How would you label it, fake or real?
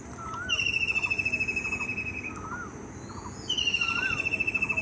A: real